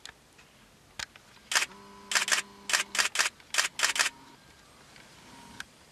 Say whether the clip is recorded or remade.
recorded